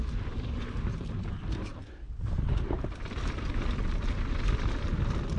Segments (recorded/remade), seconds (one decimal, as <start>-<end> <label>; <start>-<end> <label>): 0.0-5.4 recorded